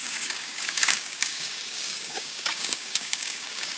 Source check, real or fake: fake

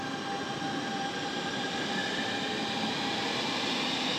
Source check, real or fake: real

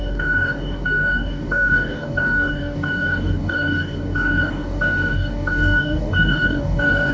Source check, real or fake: fake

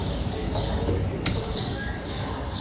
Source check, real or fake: fake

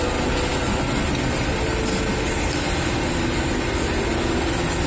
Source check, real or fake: real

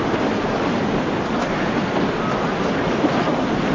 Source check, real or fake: real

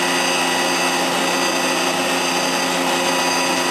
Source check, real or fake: real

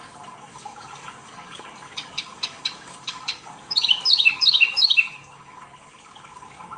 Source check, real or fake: fake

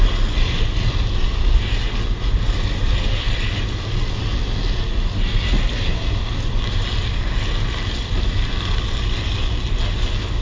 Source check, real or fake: real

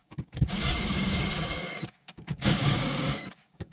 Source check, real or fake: fake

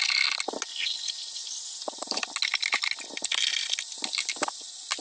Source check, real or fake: real